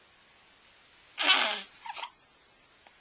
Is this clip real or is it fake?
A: real